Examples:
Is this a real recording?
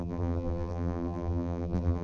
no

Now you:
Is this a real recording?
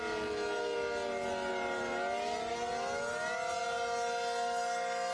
yes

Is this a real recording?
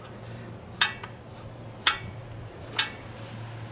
yes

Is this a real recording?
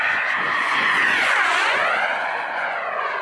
no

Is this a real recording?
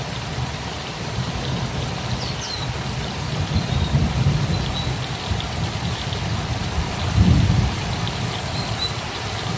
no